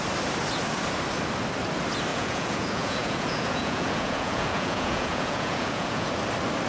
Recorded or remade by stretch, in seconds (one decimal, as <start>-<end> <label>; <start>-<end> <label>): 0.0-2.1 recorded; 2.1-6.1 remade; 6.1-6.7 recorded